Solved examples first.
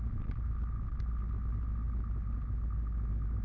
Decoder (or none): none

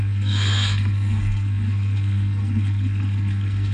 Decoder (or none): codec, SNAC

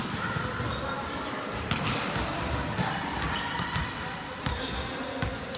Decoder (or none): none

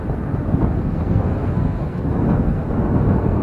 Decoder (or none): codec, SNAC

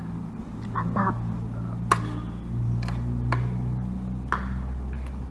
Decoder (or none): none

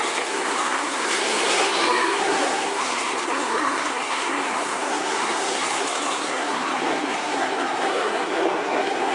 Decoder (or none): codec, SNAC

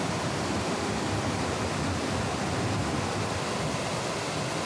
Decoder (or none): none